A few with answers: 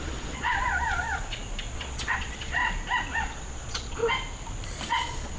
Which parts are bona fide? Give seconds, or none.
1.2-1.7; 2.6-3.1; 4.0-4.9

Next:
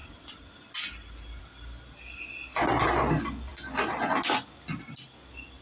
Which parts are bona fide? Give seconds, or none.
0.0-5.6

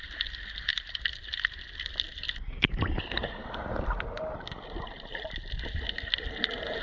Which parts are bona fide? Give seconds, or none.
0.0-6.8

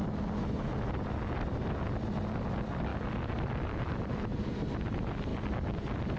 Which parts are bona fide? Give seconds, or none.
0.0-6.2

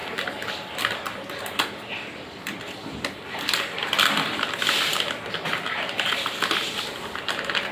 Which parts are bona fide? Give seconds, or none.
0.0-7.7

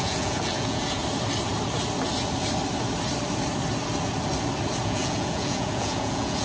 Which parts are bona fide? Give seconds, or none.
1.0-4.8